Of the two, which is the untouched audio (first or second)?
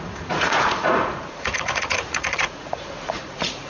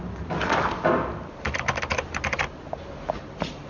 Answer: second